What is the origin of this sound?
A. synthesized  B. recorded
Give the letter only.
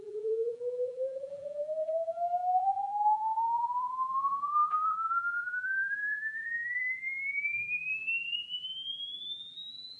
A